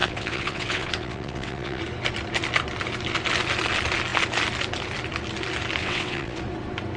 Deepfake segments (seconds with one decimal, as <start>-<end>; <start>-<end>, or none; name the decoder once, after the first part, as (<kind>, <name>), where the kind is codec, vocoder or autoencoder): 0.0-1.8 (vocoder, WaveNeXt); 5.8-6.4

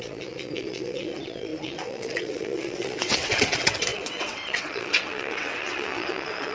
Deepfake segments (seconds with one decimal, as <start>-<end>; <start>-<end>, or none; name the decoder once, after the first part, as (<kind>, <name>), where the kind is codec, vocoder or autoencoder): 0.0-6.5 (vocoder, WaveNeXt)

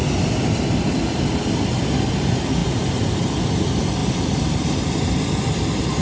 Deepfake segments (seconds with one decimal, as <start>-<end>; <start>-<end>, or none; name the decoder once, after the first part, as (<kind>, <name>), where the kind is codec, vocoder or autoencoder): none

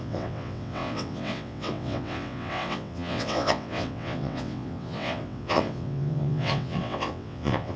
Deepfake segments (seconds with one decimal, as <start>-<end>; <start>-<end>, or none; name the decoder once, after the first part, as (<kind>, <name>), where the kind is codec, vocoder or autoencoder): 0.0-7.8 (vocoder, WaveNeXt)

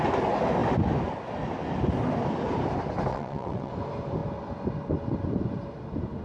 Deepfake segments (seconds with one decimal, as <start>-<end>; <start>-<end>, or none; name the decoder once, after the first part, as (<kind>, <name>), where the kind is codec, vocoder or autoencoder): 3.1-3.7 (vocoder, WaveNeXt)

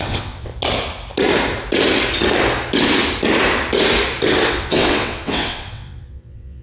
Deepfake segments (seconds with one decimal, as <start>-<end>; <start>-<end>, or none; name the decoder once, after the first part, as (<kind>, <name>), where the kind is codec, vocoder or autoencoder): 0.0-0.5 (vocoder, WaveNeXt); 4.5-6.6

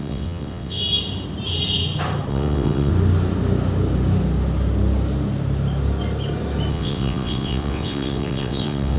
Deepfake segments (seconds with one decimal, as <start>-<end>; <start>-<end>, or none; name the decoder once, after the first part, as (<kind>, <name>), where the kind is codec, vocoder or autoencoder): 0.0-0.8 (vocoder, WaveNeXt); 2.3-2.9; 6.7-9.0